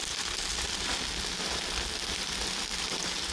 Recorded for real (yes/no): yes